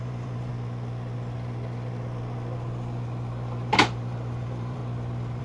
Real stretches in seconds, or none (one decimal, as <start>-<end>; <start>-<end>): 0.5-3.7; 4.8-5.4